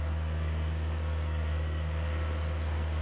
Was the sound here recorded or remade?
remade